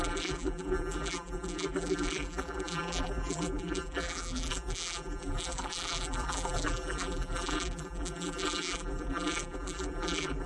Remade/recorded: remade